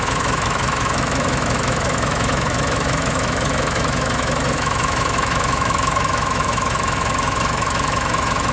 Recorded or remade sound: remade